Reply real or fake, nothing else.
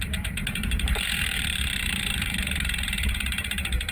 fake